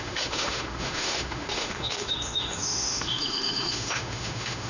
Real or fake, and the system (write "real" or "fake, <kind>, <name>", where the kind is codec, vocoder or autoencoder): fake, autoencoder, DAC-VAE